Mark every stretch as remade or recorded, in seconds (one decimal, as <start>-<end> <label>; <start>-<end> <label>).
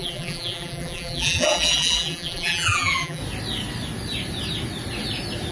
0.0-3.2 remade; 3.2-5.5 recorded